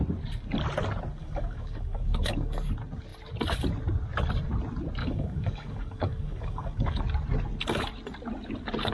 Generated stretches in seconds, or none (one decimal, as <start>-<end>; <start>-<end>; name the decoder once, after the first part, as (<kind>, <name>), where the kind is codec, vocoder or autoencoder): 1.2-2.7 (codec, DAC); 5.0-7.0